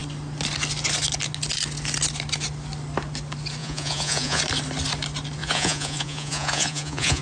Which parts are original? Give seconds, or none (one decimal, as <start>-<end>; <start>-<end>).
0.0-3.6; 4.4-5.4